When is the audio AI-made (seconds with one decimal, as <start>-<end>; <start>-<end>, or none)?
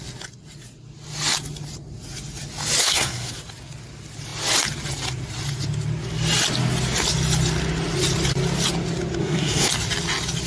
2.8-3.3; 9.2-9.7